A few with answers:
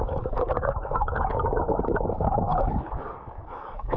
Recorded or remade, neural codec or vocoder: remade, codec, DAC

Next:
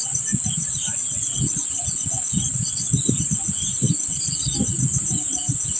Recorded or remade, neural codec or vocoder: recorded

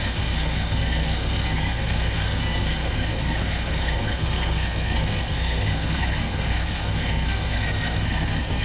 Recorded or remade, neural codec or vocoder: remade, codec, SNAC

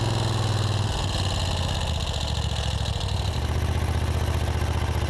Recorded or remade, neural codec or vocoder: recorded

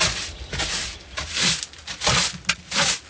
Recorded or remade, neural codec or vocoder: recorded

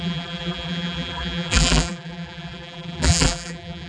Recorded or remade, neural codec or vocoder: remade, vocoder, BigVGAN v2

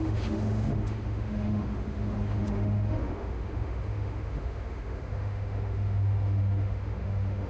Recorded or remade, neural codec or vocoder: remade, autoencoder, DAC-VAE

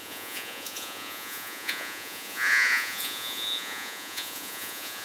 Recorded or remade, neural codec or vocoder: remade, vocoder, Vocos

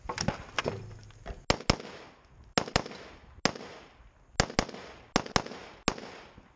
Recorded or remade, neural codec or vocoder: recorded